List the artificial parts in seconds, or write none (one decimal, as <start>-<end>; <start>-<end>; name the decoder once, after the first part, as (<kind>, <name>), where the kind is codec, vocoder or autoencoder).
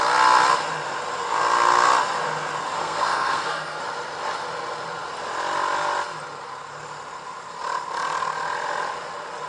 2.8-3.8 (codec, SNAC)